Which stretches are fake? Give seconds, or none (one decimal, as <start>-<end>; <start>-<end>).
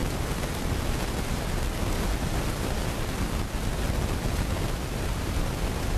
none